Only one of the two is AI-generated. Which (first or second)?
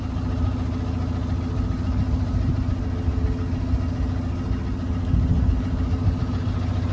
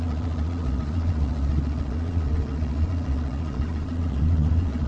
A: second